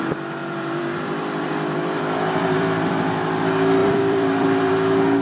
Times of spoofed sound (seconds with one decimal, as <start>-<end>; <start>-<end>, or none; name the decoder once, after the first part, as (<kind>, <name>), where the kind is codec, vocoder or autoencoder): 0.4-3.4 (vocoder, BigVGAN v2); 3.8-4.7